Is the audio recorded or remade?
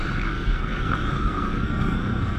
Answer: remade